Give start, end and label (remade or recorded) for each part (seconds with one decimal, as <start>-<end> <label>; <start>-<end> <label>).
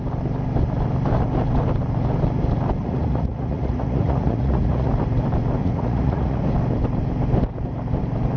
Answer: 0.0-2.8 recorded; 2.8-4.9 remade; 4.9-5.6 recorded; 5.6-6.4 remade; 6.4-8.4 recorded